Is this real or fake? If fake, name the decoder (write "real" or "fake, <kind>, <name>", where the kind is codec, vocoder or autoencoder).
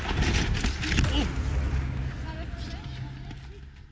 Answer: real